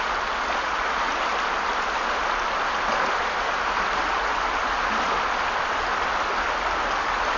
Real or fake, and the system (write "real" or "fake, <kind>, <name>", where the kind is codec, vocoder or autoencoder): real